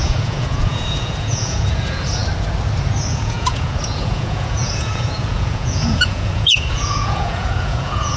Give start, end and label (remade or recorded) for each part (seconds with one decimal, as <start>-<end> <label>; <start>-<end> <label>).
0.0-2.2 remade; 2.2-3.1 recorded; 3.1-8.2 remade